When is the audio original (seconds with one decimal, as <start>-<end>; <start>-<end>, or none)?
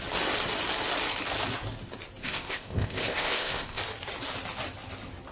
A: 0.0-2.2; 3.8-5.3